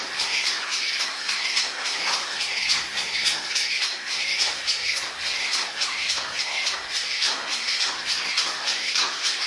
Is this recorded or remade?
remade